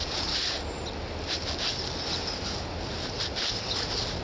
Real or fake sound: real